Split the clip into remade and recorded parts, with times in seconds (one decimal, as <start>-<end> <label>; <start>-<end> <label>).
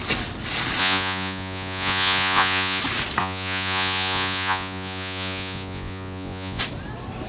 0.0-0.8 recorded; 0.8-2.8 remade; 2.8-3.2 recorded; 3.2-6.6 remade; 6.6-7.3 recorded